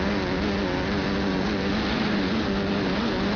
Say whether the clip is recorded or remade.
recorded